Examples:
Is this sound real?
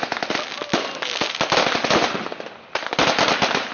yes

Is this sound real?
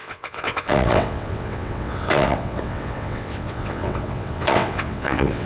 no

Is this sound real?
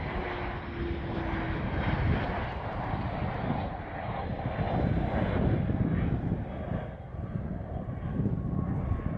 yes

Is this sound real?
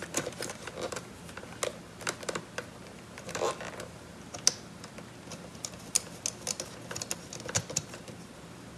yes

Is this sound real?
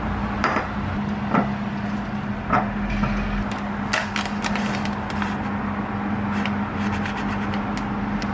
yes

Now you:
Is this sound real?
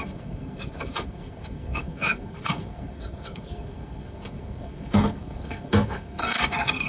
no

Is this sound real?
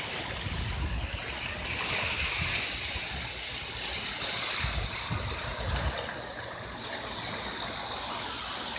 yes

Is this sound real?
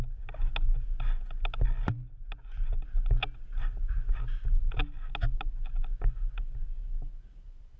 yes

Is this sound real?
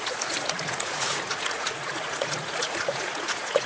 no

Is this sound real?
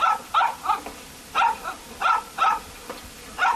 no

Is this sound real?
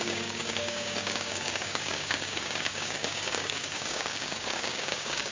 no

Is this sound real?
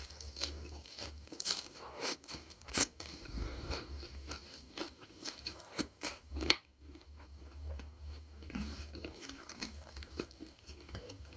no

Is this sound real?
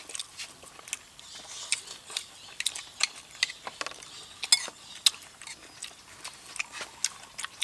yes